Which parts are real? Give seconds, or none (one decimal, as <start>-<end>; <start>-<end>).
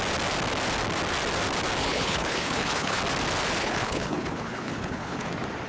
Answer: 0.0-1.8; 3.0-3.6; 5.3-5.7